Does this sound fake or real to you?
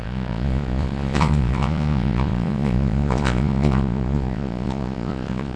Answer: fake